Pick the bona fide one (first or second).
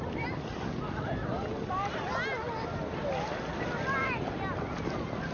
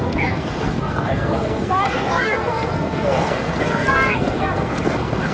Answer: first